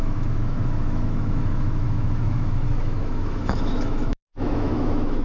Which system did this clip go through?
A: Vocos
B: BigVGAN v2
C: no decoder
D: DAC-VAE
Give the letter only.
D